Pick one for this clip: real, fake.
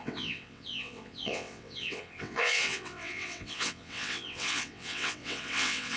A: fake